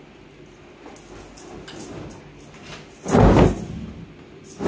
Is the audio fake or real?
real